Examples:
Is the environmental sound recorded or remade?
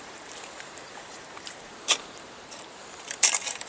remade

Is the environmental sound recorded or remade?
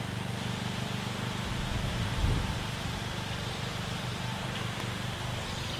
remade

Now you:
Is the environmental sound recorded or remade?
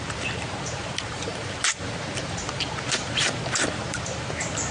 remade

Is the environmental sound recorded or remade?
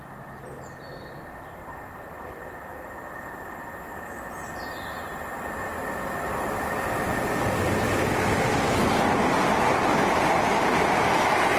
recorded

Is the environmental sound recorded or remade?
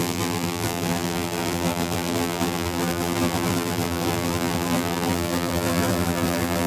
remade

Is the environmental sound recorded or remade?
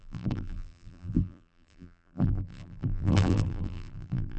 remade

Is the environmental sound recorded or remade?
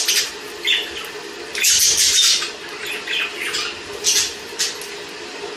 recorded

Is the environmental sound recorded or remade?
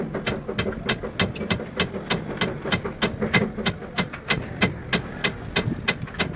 recorded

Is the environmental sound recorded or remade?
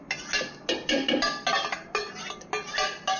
recorded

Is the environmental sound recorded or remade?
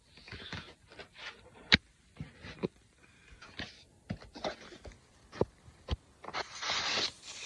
remade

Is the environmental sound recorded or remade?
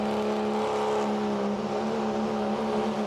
recorded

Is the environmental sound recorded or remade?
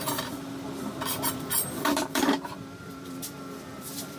remade